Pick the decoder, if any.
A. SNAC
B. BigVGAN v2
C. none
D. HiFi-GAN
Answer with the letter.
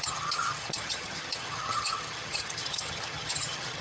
D